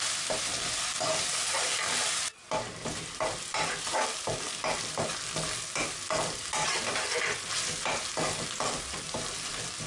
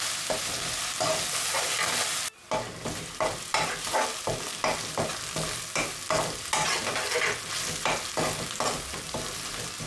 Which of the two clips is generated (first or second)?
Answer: first